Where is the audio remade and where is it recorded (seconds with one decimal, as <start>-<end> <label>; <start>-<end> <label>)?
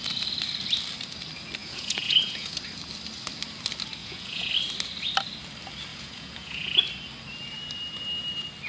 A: 0.0-1.6 recorded; 1.6-2.6 remade; 2.6-4.0 recorded; 4.0-4.5 remade; 4.5-5.9 recorded; 5.9-6.8 remade; 6.8-8.7 recorded